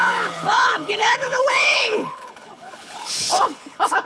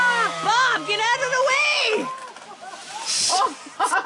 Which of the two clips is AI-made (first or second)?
first